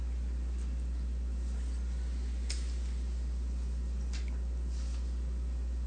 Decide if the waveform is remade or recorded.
recorded